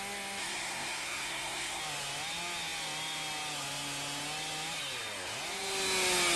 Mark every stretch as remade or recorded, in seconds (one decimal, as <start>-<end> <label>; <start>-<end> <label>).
0.0-0.4 recorded; 0.4-1.8 remade; 1.8-6.4 recorded